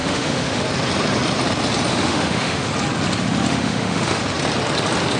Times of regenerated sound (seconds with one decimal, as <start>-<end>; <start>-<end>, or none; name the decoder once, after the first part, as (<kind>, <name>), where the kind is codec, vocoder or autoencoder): 0.0-0.6 (autoencoder, DAC-VAE); 1.9-2.7; 3.5-4.2